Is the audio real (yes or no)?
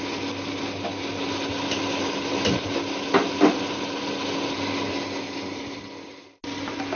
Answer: yes